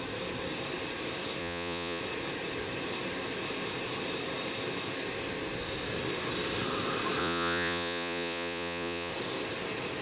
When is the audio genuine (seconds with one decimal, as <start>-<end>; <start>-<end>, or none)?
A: 0.0-1.4; 2.0-7.2; 9.1-10.0